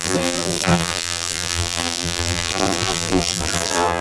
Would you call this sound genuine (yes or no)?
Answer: no